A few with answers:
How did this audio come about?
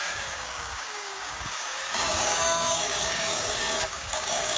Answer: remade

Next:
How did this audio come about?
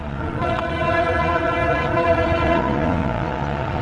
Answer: remade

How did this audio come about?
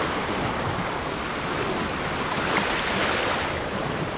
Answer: recorded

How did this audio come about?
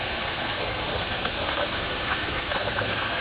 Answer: remade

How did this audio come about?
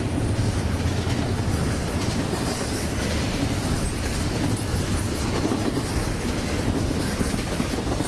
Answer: recorded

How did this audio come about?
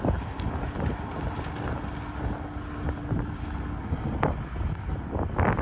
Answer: recorded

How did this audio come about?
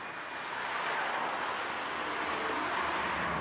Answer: recorded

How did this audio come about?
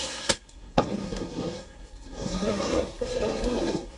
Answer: remade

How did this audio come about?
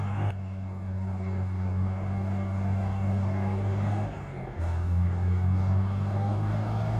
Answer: remade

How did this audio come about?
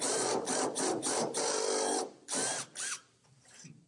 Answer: remade